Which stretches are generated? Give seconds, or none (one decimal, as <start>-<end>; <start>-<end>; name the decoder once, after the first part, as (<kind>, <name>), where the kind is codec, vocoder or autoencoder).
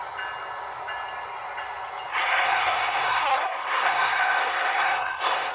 2.1-5.5 (codec, SNAC)